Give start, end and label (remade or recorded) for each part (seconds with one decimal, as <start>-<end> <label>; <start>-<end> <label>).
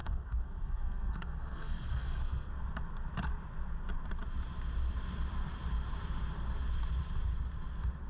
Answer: 0.0-2.5 remade; 2.5-8.1 recorded